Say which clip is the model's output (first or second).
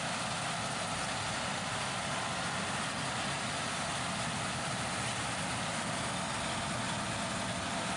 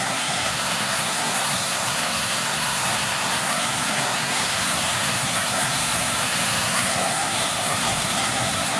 second